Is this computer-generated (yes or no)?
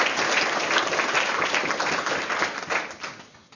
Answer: no